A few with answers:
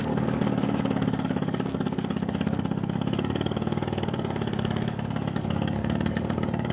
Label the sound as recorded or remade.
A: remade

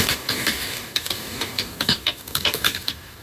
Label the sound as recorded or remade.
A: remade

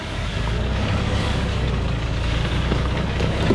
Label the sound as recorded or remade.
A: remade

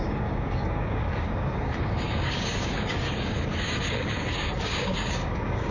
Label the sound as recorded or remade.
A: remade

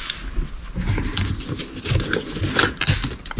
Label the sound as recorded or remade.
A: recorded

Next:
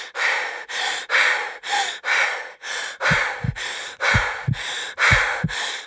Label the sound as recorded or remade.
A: recorded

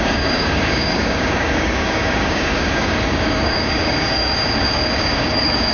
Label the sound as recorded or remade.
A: remade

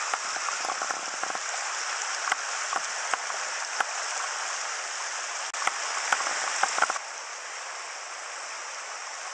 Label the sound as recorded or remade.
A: recorded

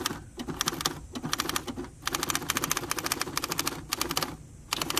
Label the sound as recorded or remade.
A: recorded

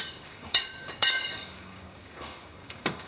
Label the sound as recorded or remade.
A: remade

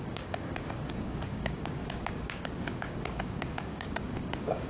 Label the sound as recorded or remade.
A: remade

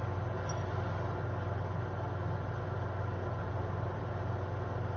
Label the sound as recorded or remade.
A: recorded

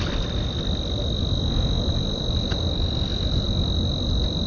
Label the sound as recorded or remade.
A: recorded